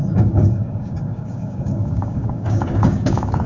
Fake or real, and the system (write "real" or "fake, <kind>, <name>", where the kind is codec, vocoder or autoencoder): fake, codec, DAC